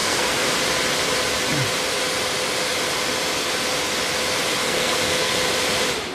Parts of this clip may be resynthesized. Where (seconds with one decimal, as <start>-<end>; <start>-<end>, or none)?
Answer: 0.0-0.5; 4.6-5.3